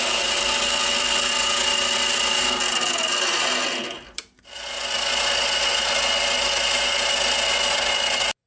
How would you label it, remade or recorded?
recorded